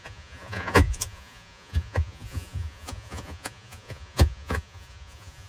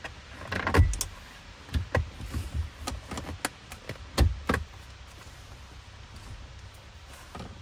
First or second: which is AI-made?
first